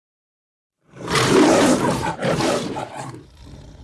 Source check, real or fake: fake